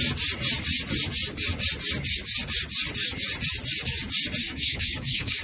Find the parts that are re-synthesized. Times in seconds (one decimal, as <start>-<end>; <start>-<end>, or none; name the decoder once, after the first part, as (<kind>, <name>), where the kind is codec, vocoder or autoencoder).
4.4-5.4 (codec, DAC)